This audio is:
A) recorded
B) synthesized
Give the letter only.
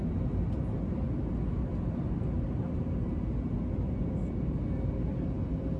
A